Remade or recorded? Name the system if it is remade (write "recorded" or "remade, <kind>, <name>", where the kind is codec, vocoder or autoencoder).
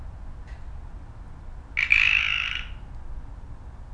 recorded